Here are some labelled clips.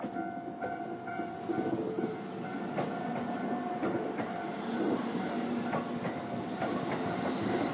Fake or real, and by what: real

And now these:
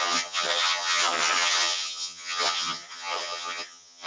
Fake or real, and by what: fake, vocoder, HiFi-GAN